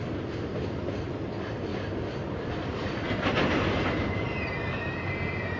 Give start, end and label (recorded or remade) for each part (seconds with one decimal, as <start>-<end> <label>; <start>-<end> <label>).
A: 0.0-5.6 recorded